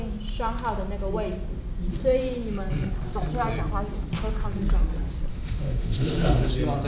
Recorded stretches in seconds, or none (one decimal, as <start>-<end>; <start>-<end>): 0.0-5.3; 6.5-6.9